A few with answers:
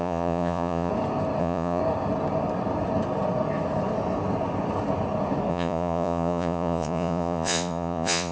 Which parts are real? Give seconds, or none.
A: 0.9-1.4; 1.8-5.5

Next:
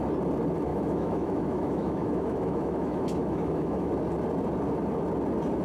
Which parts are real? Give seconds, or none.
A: 0.0-0.7; 3.9-5.6